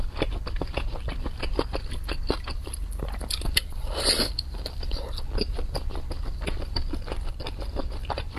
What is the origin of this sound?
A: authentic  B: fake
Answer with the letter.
A